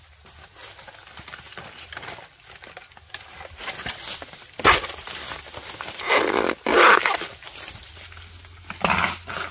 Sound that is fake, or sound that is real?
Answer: real